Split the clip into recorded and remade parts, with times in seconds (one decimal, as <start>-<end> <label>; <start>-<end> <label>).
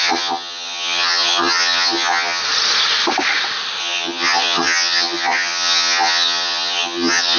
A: 0.0-2.4 remade; 2.4-3.8 recorded; 3.8-7.4 remade